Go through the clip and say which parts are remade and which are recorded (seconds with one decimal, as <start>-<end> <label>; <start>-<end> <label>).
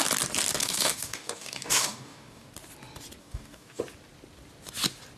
0.0-0.6 recorded; 0.6-2.5 remade; 2.5-3.2 recorded; 3.2-3.8 remade; 3.8-5.2 recorded